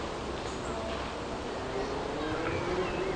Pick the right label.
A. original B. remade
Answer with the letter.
A